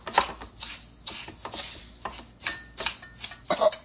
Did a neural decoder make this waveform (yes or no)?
no